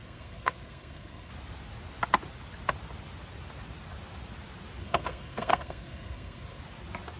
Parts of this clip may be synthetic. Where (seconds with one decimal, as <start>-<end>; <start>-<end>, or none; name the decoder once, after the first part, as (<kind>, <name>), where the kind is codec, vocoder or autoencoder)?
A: 0.0-1.3 (codec, SNAC); 4.8-6.6